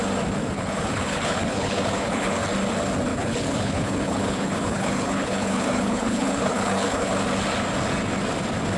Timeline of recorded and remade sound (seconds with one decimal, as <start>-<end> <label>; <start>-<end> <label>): 0.0-0.4 recorded; 0.4-2.4 remade; 2.4-3.1 recorded; 3.1-7.1 remade; 7.1-8.8 recorded